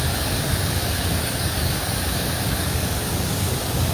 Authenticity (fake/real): fake